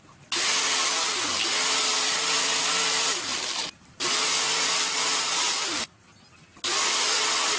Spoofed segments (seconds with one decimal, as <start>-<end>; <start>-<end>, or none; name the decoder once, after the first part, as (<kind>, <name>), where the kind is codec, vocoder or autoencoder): none